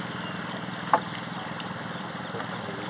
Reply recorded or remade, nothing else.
recorded